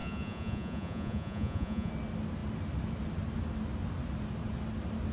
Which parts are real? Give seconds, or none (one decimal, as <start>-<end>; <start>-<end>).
1.9-5.1